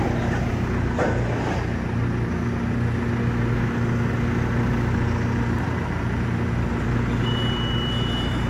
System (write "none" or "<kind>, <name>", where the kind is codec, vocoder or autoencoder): none